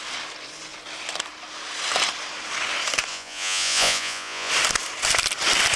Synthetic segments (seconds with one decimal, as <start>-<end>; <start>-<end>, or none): 3.1-4.5

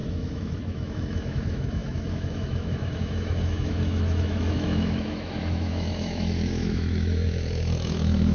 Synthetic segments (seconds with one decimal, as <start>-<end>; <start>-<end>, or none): 0.0-8.3

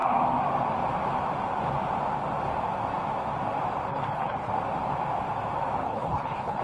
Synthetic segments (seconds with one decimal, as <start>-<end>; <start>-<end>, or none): 3.9-4.5; 5.8-6.6

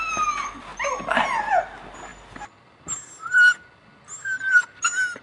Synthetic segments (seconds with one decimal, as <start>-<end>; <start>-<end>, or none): none

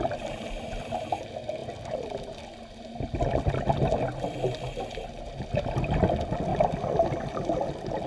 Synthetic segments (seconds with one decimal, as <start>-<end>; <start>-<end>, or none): none